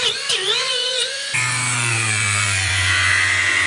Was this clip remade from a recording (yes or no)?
yes